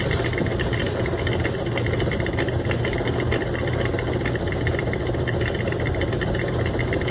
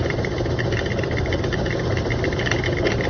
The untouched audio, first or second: first